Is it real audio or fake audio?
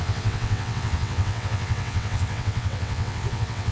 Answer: fake